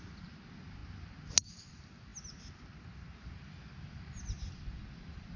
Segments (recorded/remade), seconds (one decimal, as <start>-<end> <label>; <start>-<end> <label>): 0.0-5.4 recorded